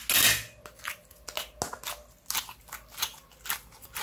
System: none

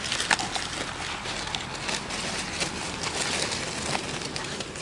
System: none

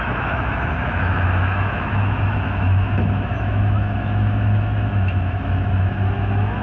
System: autoencoder, DAC-VAE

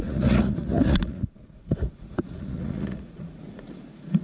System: vocoder, Vocos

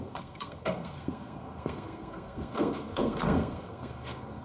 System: codec, SNAC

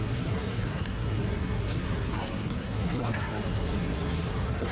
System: codec, SNAC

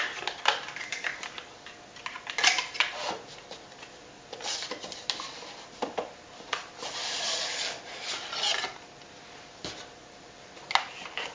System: none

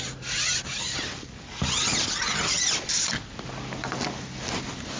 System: none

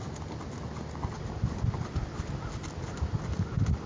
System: none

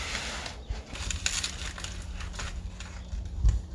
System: none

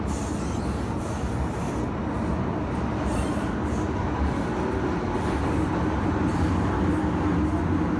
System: none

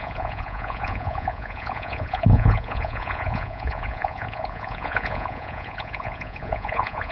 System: vocoder, Vocos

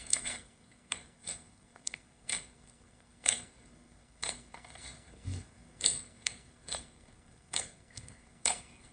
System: codec, SNAC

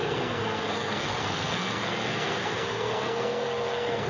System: codec, SNAC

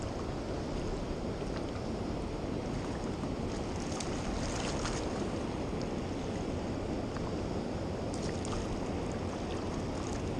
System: none